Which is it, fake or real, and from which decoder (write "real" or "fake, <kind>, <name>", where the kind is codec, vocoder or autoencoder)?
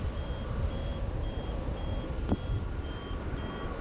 real